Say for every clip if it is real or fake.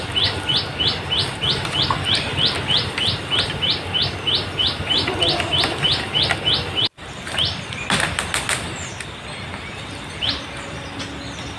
real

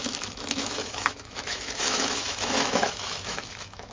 fake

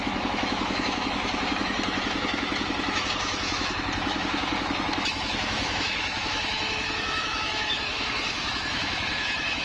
fake